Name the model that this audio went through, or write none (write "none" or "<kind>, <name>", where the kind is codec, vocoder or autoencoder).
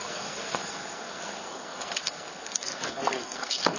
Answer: codec, SNAC